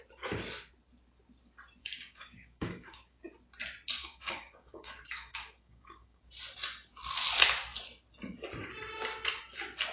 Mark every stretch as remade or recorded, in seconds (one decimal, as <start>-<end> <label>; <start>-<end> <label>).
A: 0.0-1.8 recorded; 1.8-3.2 remade; 3.2-4.0 recorded; 4.0-6.2 remade; 6.2-9.9 recorded

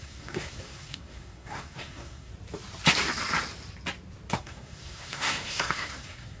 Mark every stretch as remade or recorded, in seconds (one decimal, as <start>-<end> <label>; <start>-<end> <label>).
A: 0.0-2.3 remade; 2.3-4.3 recorded; 4.3-6.4 remade

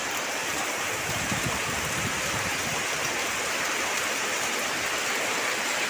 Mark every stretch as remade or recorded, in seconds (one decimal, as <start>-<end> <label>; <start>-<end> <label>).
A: 0.0-0.4 recorded; 0.4-2.1 remade; 2.1-5.9 recorded

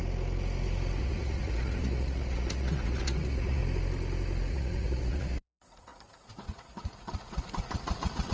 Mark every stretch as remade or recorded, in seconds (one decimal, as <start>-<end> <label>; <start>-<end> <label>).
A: 0.0-1.0 recorded; 1.0-3.6 remade; 3.6-4.5 recorded; 4.5-8.3 remade

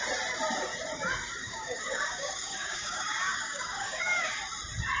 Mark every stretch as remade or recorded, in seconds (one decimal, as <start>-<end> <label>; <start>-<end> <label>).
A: 0.0-1.4 recorded; 1.4-4.4 remade; 4.4-5.0 recorded

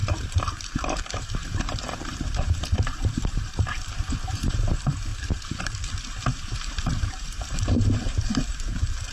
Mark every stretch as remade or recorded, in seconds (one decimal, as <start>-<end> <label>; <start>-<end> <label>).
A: 0.0-9.1 remade